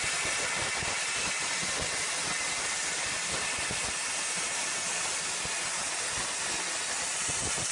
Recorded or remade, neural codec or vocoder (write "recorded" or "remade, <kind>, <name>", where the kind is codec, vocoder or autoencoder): recorded